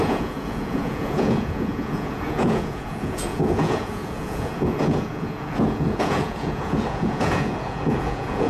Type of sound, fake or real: fake